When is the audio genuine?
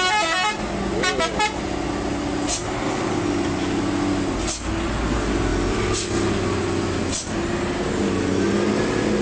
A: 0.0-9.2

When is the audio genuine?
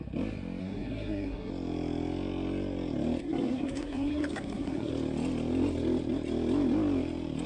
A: 0.0-0.6; 1.5-3.2; 4.9-7.5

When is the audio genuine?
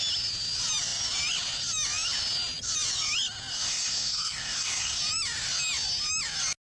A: 0.0-3.5; 5.0-6.6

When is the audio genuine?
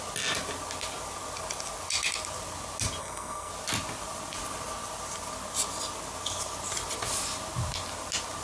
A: 0.0-3.0; 3.5-8.4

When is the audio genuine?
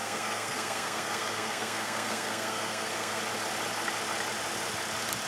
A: 3.2-5.3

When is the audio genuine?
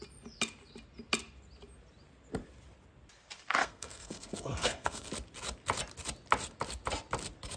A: 0.0-3.6; 5.1-7.6